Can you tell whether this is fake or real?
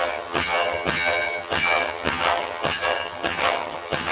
fake